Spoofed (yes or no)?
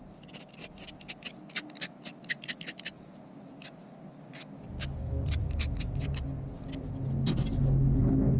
no